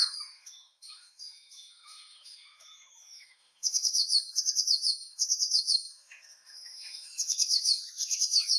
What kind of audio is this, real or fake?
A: fake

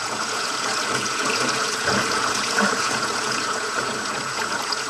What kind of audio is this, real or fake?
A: fake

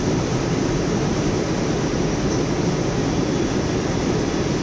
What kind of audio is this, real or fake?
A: real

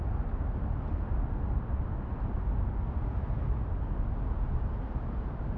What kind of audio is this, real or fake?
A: real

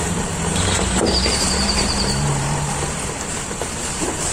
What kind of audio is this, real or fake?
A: fake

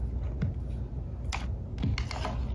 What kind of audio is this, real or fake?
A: real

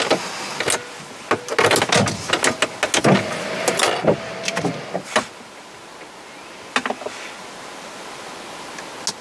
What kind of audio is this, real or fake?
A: real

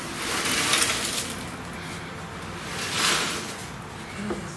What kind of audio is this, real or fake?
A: real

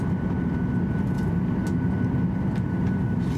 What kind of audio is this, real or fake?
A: real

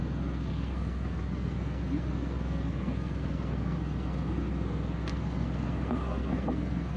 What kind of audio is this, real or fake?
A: fake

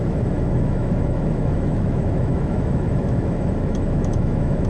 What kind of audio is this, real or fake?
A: fake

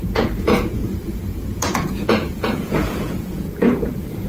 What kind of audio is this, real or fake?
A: fake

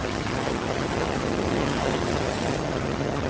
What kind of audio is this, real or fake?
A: fake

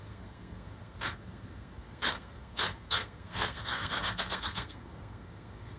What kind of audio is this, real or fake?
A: fake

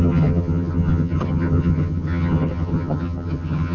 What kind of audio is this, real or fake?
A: fake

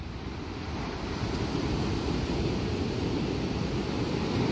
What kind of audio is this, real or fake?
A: real